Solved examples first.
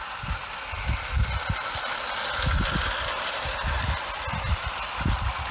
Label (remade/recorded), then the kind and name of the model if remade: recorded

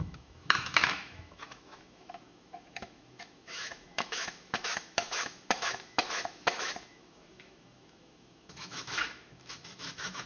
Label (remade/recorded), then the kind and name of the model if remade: remade, autoencoder, DAC-VAE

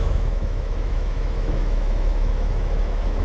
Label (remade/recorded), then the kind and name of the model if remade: remade, autoencoder, DAC-VAE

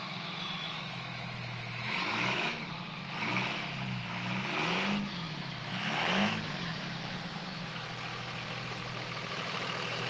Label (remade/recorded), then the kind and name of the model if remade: remade, autoencoder, DAC-VAE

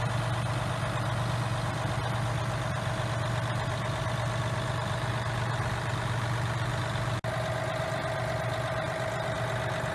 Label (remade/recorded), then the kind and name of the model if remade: recorded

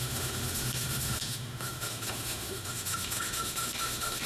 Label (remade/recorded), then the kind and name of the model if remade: remade, autoencoder, DAC-VAE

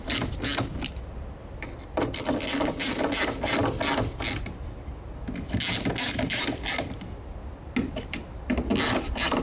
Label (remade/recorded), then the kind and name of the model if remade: recorded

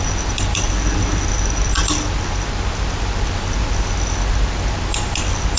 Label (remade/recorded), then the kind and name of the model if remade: recorded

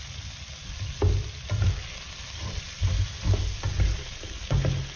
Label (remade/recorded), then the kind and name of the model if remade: recorded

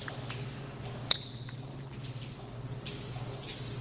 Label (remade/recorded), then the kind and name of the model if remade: recorded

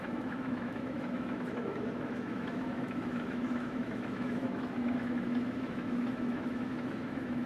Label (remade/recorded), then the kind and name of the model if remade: remade, autoencoder, DAC-VAE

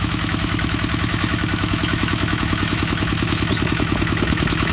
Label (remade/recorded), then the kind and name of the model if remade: remade, autoencoder, DAC-VAE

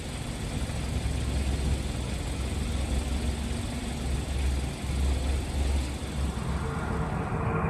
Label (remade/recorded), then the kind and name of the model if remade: recorded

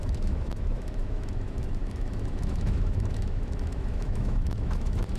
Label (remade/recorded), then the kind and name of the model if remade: remade, autoencoder, DAC-VAE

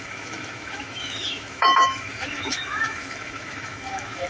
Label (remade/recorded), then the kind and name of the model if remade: remade, autoencoder, DAC-VAE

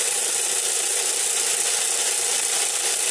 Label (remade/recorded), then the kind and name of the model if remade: recorded